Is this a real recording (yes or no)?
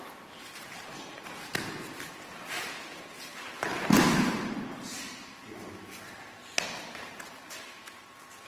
no